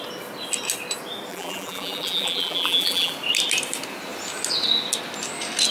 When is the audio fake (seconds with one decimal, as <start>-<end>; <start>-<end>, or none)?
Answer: 1.3-3.1